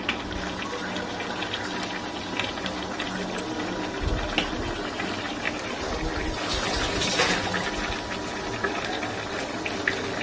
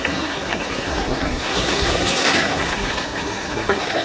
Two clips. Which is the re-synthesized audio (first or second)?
second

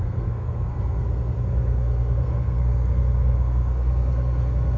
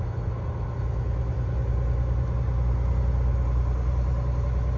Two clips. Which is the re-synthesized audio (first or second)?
first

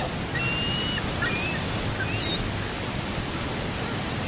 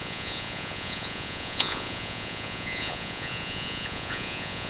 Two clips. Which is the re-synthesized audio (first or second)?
second